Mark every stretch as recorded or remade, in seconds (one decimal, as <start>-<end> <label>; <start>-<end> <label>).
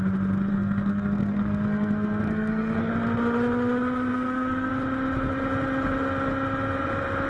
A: 0.0-0.5 recorded; 0.5-2.9 remade; 2.9-4.1 recorded; 4.1-4.7 remade; 4.7-7.3 recorded